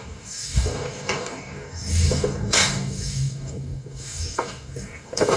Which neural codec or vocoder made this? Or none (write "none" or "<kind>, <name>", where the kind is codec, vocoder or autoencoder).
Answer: codec, DAC